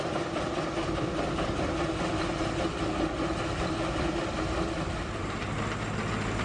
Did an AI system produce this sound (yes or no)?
no